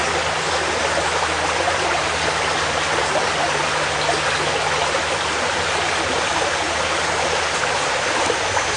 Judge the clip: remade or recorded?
recorded